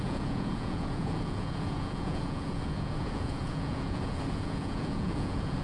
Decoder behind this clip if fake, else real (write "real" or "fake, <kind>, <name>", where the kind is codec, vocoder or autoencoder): fake, vocoder, Vocos